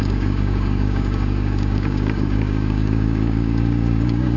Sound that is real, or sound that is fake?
fake